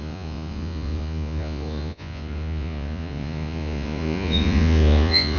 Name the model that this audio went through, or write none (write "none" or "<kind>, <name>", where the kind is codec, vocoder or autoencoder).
vocoder, Vocos